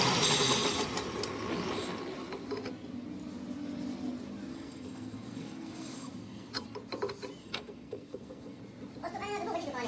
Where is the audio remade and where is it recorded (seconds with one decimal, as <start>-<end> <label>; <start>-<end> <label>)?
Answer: 0.0-4.5 recorded; 4.5-6.5 remade; 6.5-7.4 recorded; 7.4-8.6 remade; 8.6-9.9 recorded

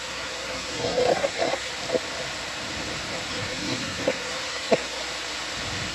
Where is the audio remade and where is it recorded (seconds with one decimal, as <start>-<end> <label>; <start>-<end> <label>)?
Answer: 0.0-1.7 remade; 1.7-3.3 recorded; 3.3-5.0 remade; 5.0-5.9 recorded

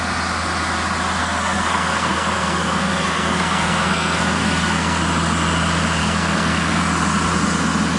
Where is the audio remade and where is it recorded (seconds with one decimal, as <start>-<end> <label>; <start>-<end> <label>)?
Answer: 0.0-1.2 recorded; 1.2-5.0 remade; 5.0-6.0 recorded; 6.0-6.8 remade; 6.8-8.0 recorded

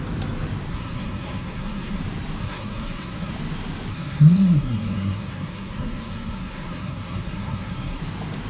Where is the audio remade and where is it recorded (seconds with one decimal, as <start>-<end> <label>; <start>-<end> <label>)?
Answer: 0.0-0.7 recorded; 0.7-2.0 remade; 2.0-2.4 recorded; 2.4-3.3 remade; 3.3-3.9 recorded; 3.9-8.0 remade; 8.0-8.5 recorded

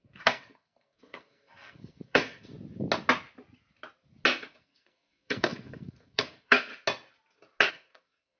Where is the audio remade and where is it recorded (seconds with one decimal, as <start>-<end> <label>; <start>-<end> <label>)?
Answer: 0.0-2.5 remade; 2.5-4.4 recorded; 4.4-6.7 remade; 6.7-7.7 recorded; 7.7-8.4 remade

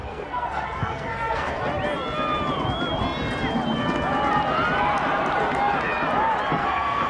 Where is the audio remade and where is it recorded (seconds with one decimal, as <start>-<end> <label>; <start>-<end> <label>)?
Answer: 0.0-1.6 remade; 1.6-6.6 recorded; 6.6-7.1 remade